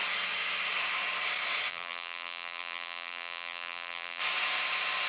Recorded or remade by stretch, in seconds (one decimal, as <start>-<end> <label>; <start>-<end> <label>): 0.0-1.7 recorded; 1.7-4.2 remade; 4.2-5.1 recorded